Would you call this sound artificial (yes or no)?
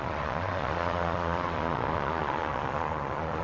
yes